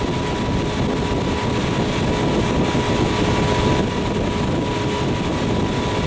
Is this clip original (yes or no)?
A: yes